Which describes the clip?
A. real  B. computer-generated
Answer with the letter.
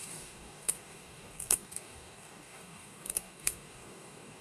B